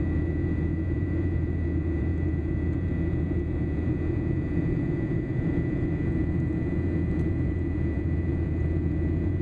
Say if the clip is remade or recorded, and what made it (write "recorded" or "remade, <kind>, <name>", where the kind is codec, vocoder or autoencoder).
remade, vocoder, Vocos